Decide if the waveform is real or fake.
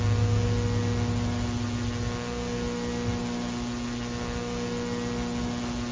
real